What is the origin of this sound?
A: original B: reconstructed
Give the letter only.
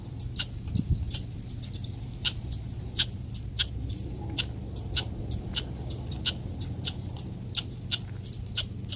A